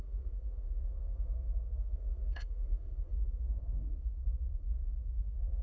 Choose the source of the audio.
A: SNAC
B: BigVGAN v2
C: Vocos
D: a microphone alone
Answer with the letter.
A